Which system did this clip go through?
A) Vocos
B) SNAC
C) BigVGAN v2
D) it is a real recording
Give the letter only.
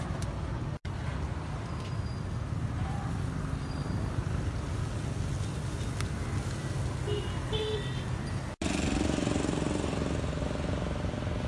D